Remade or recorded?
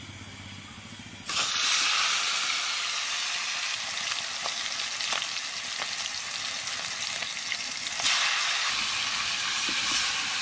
recorded